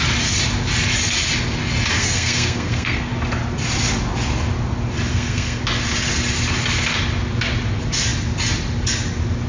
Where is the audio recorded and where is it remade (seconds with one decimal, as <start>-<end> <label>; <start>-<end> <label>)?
0.0-1.9 recorded; 1.9-3.1 remade; 3.1-5.1 recorded; 5.1-5.6 remade; 5.6-9.5 recorded